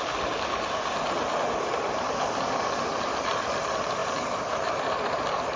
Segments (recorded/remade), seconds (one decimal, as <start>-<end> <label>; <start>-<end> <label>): 0.0-5.6 recorded